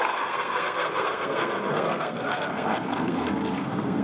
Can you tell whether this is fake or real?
fake